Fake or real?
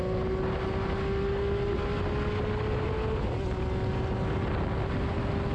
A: real